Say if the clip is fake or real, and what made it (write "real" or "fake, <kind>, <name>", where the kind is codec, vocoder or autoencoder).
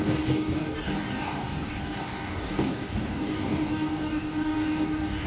fake, codec, DAC